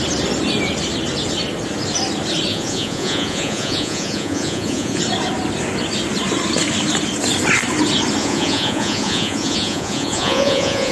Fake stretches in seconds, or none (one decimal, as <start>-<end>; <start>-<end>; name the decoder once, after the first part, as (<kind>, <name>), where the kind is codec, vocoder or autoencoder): 2.5-5.0 (vocoder, Vocos); 8.2-10.9